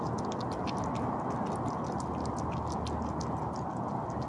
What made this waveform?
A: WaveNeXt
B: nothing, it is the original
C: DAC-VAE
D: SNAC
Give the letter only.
B